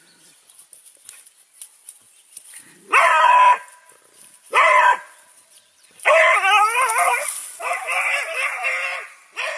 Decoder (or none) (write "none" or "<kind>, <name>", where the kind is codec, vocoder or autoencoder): none